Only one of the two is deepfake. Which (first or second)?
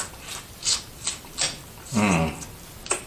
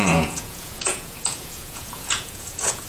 second